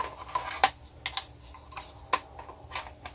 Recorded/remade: recorded